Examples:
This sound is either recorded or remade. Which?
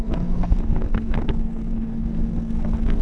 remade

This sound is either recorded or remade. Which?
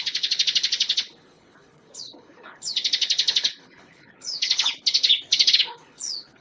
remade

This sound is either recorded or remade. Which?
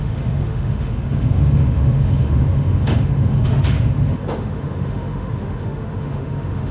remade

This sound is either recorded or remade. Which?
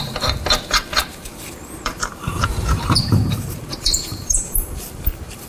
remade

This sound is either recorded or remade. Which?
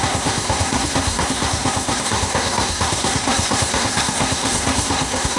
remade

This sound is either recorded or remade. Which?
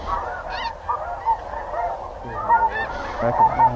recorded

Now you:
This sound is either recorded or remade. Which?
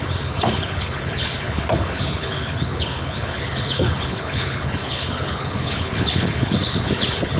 remade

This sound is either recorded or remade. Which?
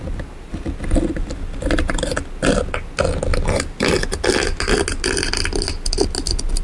recorded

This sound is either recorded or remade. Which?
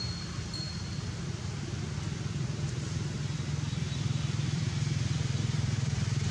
remade